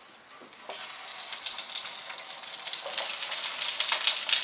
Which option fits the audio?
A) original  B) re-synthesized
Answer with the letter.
A